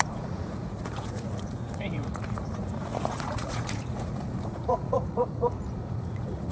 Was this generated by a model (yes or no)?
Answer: yes